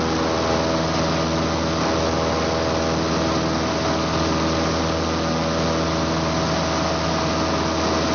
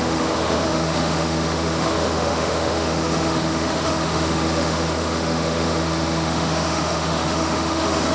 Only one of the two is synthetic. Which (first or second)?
second